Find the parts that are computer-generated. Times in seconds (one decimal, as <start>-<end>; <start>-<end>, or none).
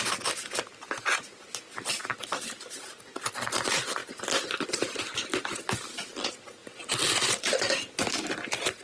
none